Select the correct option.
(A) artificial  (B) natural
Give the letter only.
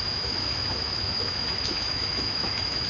A